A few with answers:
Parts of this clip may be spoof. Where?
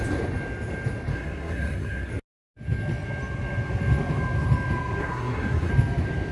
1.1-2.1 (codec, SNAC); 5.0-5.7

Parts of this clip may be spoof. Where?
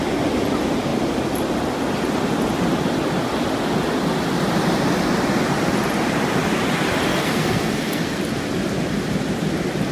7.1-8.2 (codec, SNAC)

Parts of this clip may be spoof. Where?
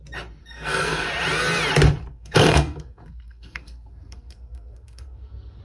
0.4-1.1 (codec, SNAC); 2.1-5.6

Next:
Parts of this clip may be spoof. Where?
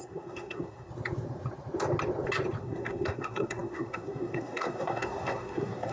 0.0-0.9 (codec, SNAC); 2.6-5.9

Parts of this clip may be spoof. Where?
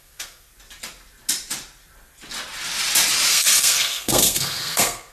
0.0-0.5 (codec, SNAC); 3.3-5.1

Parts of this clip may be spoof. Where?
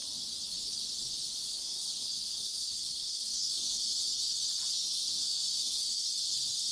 1.5-3.8 (codec, SNAC); 4.7-6.1